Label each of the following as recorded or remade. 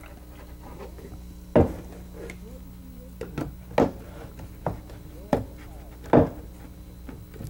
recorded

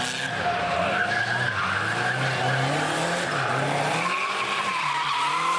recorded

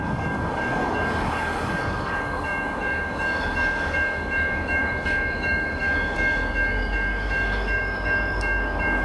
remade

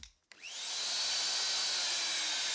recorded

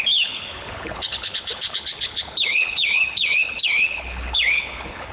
remade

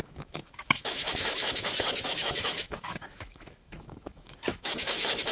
remade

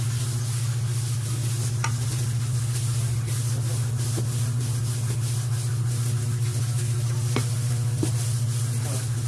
recorded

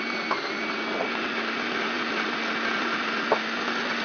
recorded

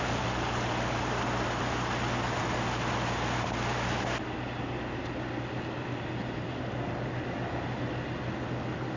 recorded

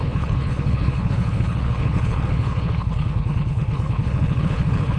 remade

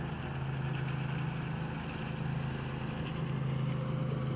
recorded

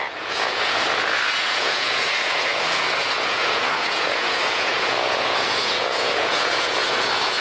remade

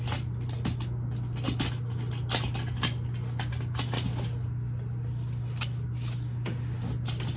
recorded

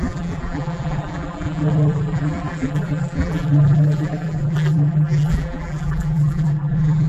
remade